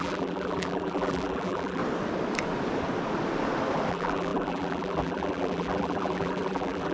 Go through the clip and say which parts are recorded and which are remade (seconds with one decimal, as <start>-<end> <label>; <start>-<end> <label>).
0.0-1.8 remade; 1.8-3.9 recorded; 3.9-6.9 remade